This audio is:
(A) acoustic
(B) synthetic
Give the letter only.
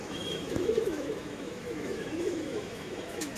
B